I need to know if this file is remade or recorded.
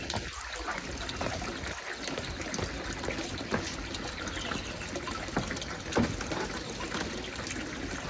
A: recorded